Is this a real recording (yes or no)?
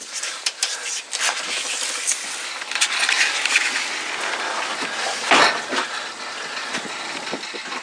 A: yes